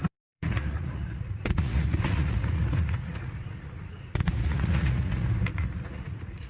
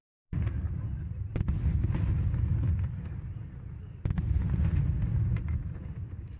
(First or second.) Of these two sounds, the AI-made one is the first